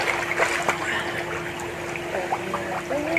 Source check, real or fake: real